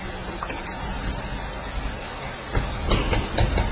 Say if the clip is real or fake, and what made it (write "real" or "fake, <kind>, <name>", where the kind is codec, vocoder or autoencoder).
real